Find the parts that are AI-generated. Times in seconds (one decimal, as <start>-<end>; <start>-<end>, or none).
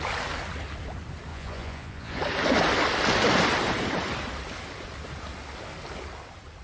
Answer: 1.3-2.2